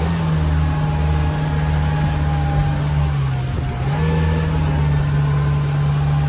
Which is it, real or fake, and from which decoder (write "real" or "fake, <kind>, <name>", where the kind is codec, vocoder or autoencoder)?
real